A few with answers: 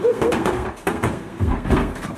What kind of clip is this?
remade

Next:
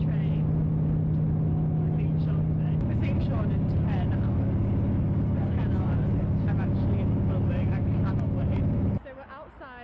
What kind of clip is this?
recorded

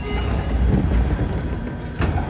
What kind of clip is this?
recorded